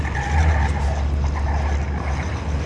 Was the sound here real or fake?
real